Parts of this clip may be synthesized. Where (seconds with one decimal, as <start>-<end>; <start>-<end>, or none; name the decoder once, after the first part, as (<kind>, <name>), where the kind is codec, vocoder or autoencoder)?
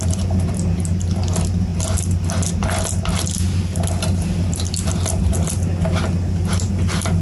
none